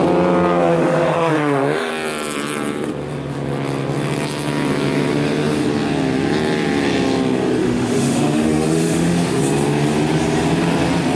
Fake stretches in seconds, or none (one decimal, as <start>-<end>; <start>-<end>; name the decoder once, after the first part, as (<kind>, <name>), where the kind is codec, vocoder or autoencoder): 0.7-1.9 (autoencoder, DAC-VAE); 7.6-9.4

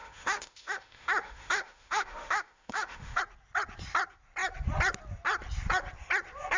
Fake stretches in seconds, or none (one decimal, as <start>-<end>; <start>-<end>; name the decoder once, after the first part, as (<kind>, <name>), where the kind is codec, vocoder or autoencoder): 0.0-3.2 (autoencoder, DAC-VAE)

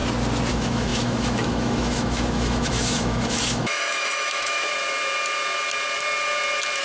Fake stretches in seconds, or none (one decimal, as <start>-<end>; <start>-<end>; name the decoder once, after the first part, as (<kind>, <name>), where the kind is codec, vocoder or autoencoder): 0.5-4.7 (autoencoder, DAC-VAE)

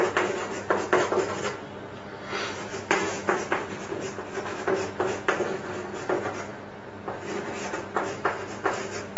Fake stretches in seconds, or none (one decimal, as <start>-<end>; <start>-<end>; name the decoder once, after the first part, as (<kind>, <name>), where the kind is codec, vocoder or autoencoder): 2.7-3.4 (autoencoder, DAC-VAE); 4.5-5.3

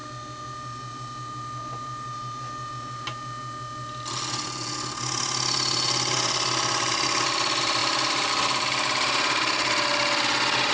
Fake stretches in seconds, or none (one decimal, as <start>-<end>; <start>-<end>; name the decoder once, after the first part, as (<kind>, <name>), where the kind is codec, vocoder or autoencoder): none

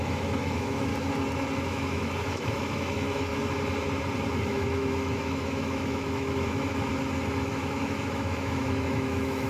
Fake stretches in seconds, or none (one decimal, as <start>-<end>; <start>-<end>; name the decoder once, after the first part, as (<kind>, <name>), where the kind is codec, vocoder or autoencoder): 0.0-0.9 (autoencoder, DAC-VAE); 1.7-3.3; 4.3-6.9; 7.5-9.5

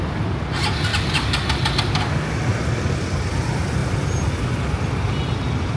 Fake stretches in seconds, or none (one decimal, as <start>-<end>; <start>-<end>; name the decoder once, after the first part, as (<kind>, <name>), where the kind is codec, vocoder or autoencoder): none